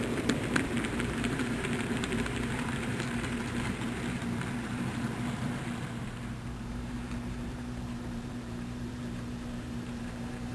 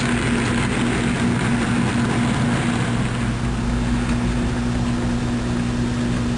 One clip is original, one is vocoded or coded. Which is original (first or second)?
second